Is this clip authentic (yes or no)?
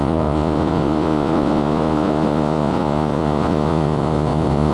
no